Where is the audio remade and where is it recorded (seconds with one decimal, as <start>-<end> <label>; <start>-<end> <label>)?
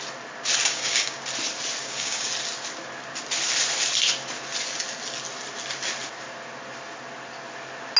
0.0-0.6 recorded; 0.6-1.2 remade; 1.2-1.8 recorded; 1.8-2.3 remade; 2.3-8.0 recorded